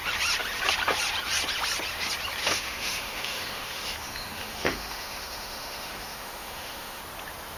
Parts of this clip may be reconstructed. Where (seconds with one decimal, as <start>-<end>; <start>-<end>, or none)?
2.4-7.0